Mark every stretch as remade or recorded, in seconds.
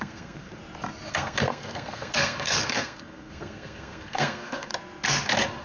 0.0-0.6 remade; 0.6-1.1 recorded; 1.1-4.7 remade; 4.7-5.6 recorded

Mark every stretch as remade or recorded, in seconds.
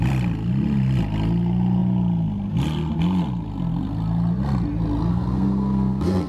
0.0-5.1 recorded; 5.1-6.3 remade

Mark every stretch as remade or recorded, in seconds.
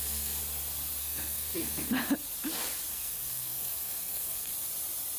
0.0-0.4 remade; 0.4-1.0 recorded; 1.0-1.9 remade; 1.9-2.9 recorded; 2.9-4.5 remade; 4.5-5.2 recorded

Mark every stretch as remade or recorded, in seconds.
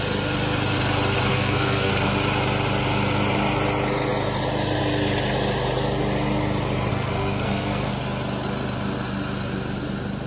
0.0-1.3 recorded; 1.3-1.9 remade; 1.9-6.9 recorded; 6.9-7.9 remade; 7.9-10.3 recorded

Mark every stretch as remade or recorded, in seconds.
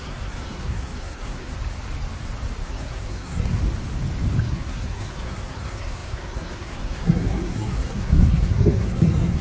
0.0-1.6 remade; 1.6-2.7 recorded; 2.7-3.6 remade; 3.6-4.4 recorded; 4.4-9.4 remade